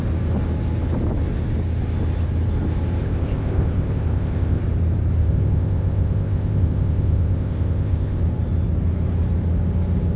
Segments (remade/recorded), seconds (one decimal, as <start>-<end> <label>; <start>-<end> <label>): 0.0-3.0 recorded; 3.0-4.6 remade; 4.6-5.2 recorded; 5.2-8.2 remade; 8.2-10.2 recorded